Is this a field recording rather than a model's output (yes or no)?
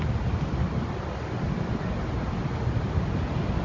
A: yes